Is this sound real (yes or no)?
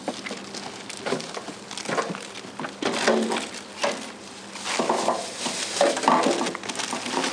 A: yes